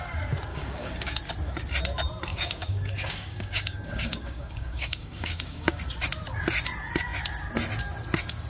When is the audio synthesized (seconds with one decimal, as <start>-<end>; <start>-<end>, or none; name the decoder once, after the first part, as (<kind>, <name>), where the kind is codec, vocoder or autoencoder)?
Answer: 0.5-1.2 (codec, DAC); 2.3-5.7